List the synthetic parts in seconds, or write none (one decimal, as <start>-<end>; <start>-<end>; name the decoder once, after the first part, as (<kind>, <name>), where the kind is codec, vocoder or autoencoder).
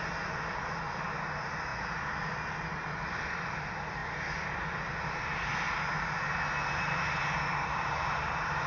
0.0-1.7 (vocoder, BigVGAN v2); 3.3-4.0; 7.7-8.7